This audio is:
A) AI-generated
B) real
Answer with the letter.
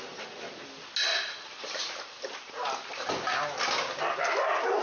B